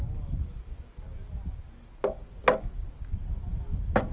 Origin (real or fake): real